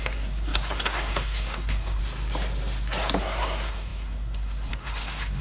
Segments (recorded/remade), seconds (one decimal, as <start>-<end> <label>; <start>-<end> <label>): 0.0-2.0 remade; 2.0-3.2 recorded; 3.2-5.4 remade